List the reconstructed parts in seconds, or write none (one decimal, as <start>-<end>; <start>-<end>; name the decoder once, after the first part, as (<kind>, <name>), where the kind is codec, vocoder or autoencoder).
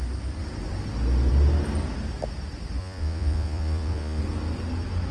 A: 2.8-4.2 (vocoder, Vocos)